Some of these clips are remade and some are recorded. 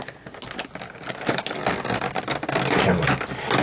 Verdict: recorded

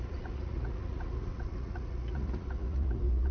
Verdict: remade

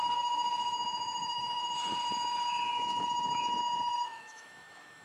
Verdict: remade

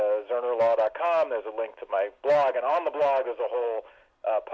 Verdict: recorded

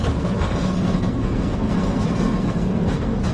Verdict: remade